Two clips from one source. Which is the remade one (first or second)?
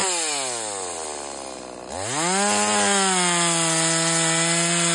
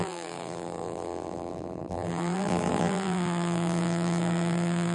second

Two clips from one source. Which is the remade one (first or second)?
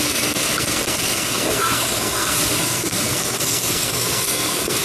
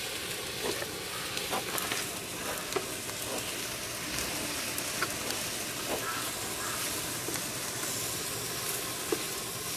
first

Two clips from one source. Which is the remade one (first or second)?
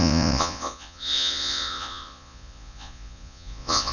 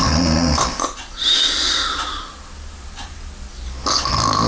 first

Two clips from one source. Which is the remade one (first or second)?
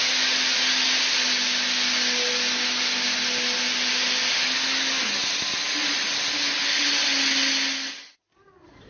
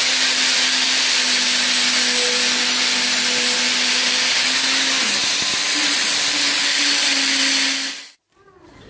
second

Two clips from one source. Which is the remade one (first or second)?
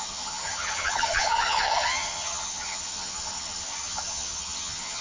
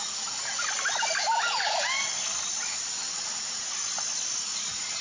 first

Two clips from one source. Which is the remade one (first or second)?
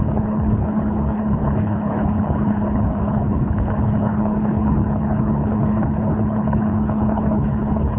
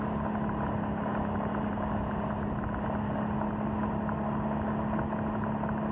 first